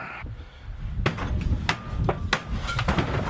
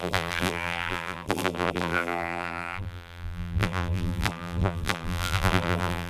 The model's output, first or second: second